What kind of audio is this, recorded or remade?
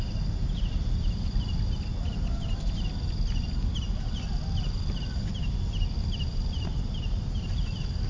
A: recorded